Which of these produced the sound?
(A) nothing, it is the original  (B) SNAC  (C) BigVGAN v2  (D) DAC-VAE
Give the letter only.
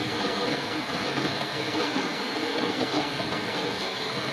B